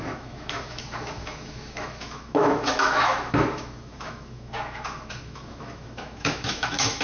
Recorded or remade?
remade